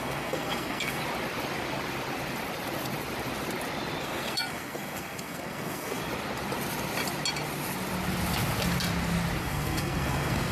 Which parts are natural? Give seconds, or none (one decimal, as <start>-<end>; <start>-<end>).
1.0-4.0; 6.0-9.4